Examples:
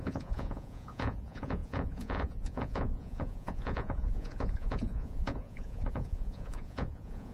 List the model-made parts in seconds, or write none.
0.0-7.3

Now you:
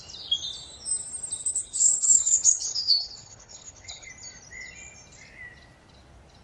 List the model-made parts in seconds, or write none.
1.4-4.1

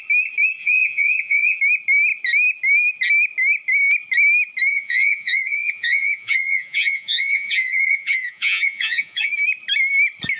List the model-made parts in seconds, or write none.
0.6-1.6; 4.7-9.3

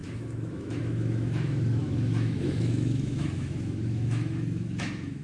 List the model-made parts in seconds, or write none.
0.0-5.2

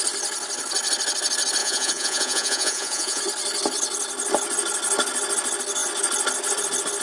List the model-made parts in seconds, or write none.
1.6-3.2

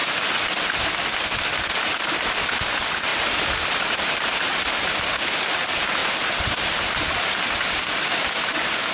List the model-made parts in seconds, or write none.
3.1-5.2; 6.0-7.4

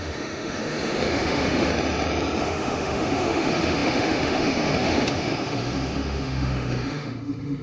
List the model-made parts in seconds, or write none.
0.0-1.7; 2.4-7.6

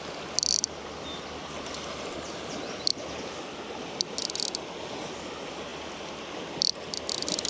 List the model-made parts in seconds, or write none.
none